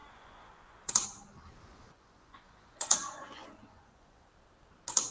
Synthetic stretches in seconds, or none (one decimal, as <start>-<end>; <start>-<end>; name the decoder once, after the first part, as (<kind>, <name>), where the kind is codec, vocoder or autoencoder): 0.0-0.9 (vocoder, Vocos); 1.7-4.3